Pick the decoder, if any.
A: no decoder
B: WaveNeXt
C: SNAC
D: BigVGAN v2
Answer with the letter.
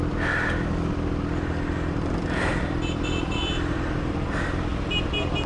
A